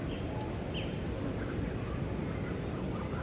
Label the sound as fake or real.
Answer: real